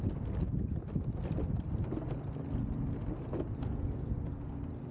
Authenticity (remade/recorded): recorded